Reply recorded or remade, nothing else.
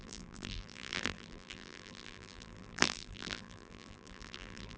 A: remade